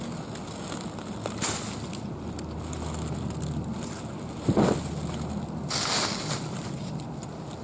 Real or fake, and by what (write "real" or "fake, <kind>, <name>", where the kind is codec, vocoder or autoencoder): real